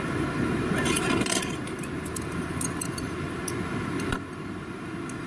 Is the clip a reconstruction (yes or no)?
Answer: no